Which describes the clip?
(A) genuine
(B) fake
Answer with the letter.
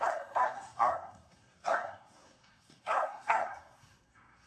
B